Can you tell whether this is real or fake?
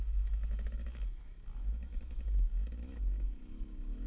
fake